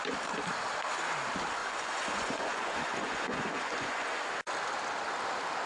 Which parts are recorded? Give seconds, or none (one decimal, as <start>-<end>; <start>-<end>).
0.0-1.6; 4.2-5.7